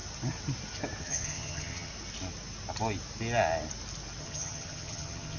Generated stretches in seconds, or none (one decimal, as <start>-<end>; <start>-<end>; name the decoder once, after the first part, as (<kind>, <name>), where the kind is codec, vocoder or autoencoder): 1.0-1.9 (vocoder, HiFi-GAN); 4.2-5.4